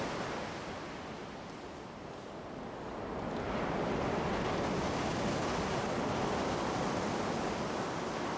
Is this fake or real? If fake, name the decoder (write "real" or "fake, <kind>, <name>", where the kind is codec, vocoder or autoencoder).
real